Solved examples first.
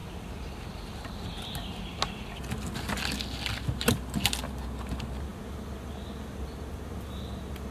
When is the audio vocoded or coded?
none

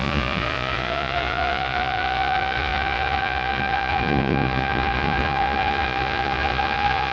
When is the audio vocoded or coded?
0.0-7.1 (vocoder, Vocos)

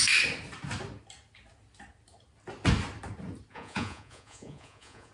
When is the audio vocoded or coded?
3.5-5.1 (vocoder, Vocos)

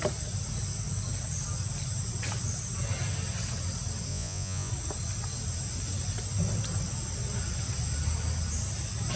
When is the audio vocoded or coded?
4.1-4.7 (vocoder, Vocos)

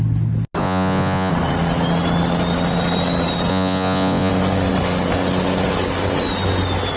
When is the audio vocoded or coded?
0.6-1.3 (vocoder, Vocos); 3.5-4.3

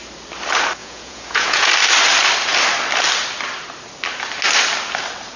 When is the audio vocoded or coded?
0.8-1.7 (vocoder, Vocos)

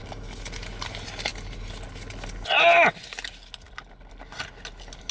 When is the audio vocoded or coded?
none

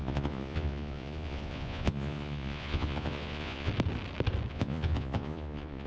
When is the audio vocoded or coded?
0.0-3.7 (vocoder, Vocos); 4.5-5.9